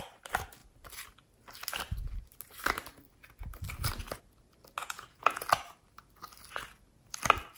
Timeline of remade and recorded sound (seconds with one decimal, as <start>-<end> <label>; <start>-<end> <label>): 0.0-4.8 recorded; 4.8-5.4 remade; 5.4-7.6 recorded